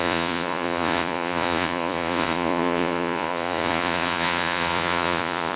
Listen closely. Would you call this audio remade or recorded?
remade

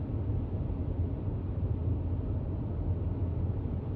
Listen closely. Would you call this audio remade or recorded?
recorded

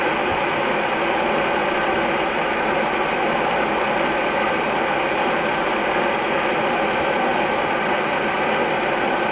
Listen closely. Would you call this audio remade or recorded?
recorded